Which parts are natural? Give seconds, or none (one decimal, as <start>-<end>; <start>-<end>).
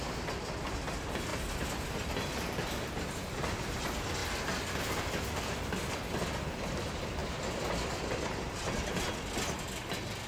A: 0.0-10.3